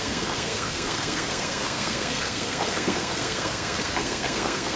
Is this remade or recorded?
remade